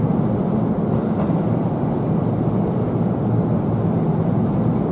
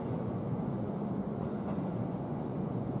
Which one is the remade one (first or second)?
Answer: second